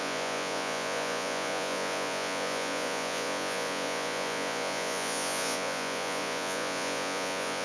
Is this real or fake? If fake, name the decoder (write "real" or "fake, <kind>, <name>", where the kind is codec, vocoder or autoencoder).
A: fake, vocoder, Vocos